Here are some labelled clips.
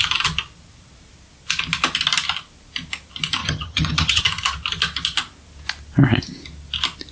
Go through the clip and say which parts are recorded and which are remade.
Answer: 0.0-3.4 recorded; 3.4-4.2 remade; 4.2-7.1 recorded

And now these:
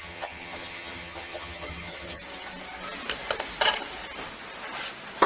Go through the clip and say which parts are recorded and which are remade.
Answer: 0.0-2.2 remade; 2.2-5.3 recorded

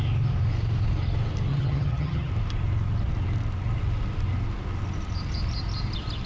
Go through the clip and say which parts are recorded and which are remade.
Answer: 0.0-1.5 recorded; 1.5-2.3 remade; 2.3-6.3 recorded